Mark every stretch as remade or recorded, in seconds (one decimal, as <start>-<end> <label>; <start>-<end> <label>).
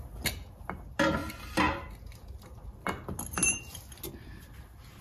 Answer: 0.0-5.0 recorded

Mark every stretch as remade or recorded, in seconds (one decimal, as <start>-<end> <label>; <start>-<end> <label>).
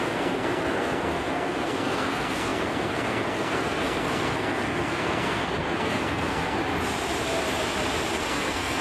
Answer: 0.0-6.6 remade; 6.6-8.1 recorded; 8.1-8.8 remade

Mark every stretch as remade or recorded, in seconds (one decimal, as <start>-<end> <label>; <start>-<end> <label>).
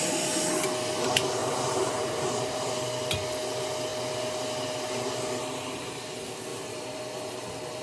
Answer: 0.0-1.4 recorded; 1.4-2.7 remade; 2.7-6.5 recorded; 6.5-7.0 remade; 7.0-7.8 recorded